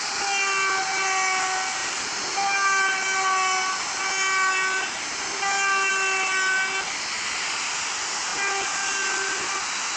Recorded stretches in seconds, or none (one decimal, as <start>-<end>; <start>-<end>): 0.0-10.0